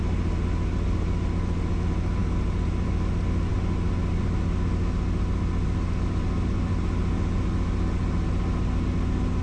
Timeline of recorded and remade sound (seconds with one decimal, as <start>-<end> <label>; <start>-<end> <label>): 0.0-9.4 recorded